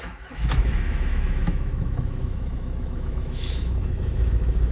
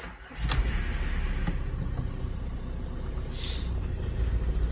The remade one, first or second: first